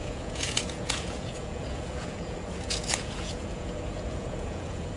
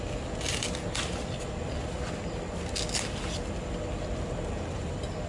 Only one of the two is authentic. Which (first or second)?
second